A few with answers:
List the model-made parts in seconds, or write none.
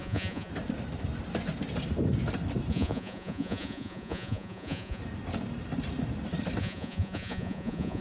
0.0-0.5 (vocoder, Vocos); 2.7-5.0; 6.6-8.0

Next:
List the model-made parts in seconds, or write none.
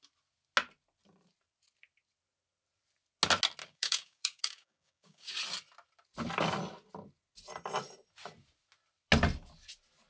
3.6-5.4 (codec, DAC)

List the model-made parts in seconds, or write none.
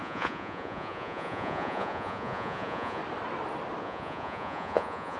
0.0-3.0 (vocoder, Vocos); 3.8-5.2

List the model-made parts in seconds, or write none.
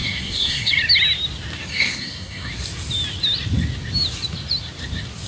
0.0-0.7 (codec, SNAC); 1.7-2.5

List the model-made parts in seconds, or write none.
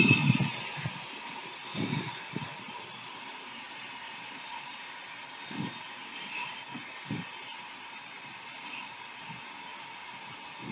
0.5-5.0 (vocoder, BigVGAN v2); 6.0-9.8